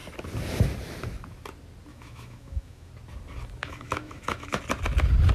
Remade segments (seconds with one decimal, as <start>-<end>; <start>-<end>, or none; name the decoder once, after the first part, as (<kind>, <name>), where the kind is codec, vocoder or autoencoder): 1.9-2.9 (autoencoder, DAC-VAE); 3.6-4.6